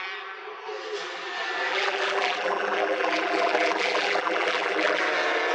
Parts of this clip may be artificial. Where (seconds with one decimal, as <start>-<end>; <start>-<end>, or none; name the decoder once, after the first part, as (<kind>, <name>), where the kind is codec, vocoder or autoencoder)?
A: 1.7-5.0 (vocoder, BigVGAN v2)